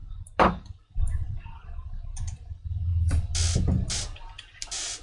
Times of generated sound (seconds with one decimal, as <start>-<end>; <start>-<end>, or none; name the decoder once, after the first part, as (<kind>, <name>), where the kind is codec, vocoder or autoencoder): 0.0-1.3 (vocoder, BigVGAN v2)